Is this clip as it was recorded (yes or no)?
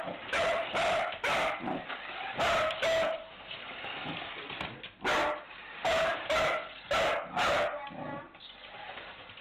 yes